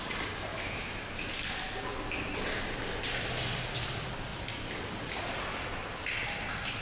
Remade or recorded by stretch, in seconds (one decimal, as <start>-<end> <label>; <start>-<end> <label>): 0.0-0.5 recorded; 0.5-1.3 remade; 1.3-6.8 recorded